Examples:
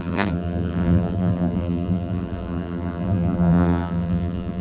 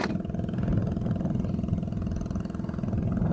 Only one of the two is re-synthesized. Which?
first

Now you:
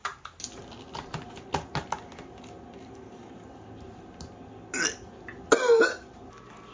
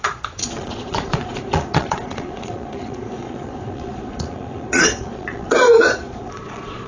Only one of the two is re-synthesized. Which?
second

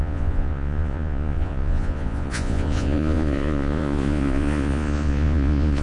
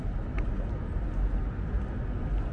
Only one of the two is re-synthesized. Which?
first